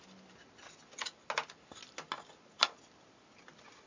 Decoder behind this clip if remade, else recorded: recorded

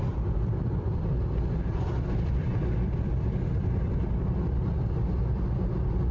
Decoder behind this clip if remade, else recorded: remade, vocoder, BigVGAN v2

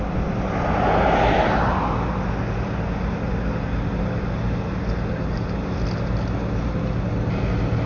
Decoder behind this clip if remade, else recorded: recorded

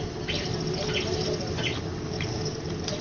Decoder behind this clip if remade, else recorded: recorded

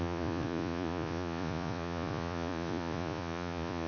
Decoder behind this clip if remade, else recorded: remade, vocoder, Vocos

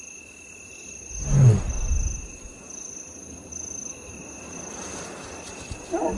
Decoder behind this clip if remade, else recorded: recorded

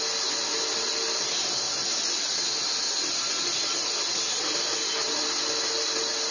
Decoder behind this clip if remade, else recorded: recorded